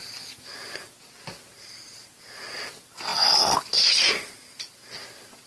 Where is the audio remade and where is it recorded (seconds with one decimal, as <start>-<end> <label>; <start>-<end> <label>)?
0.0-5.5 recorded